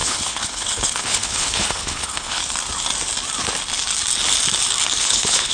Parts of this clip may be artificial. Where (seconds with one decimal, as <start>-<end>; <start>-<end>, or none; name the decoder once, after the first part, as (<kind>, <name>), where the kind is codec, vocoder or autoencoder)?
0.0-2.4 (codec, HILCodec); 5.0-5.5